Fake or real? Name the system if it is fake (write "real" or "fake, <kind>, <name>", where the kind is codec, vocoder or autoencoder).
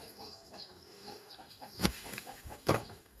fake, codec, DAC